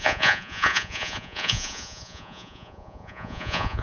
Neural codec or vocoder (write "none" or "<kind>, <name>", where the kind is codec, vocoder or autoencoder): vocoder, Vocos